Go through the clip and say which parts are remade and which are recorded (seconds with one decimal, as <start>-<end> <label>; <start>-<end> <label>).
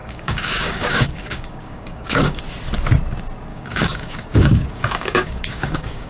0.0-2.4 remade; 2.4-3.5 recorded; 3.5-6.1 remade